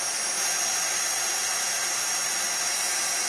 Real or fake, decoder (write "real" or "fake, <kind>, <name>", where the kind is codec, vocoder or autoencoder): real